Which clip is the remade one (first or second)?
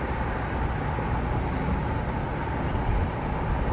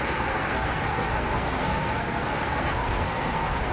second